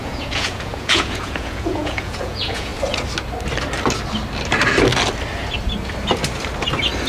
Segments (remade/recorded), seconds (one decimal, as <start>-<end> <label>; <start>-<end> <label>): 0.0-2.7 remade; 2.7-7.1 recorded